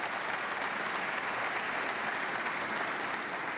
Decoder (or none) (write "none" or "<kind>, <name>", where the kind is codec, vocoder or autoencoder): none